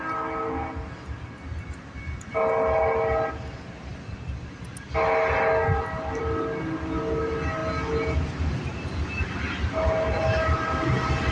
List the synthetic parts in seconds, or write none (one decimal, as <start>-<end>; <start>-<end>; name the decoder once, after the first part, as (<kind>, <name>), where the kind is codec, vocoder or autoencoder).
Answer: none